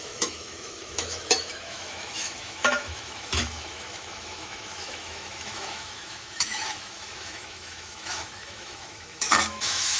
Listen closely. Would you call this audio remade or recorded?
remade